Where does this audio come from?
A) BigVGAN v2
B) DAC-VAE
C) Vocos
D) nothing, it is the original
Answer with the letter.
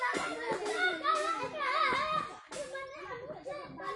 D